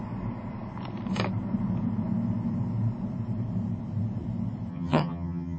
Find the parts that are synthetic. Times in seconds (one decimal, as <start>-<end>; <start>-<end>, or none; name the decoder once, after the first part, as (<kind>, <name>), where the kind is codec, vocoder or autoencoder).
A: 4.7-5.6 (vocoder, HiFi-GAN)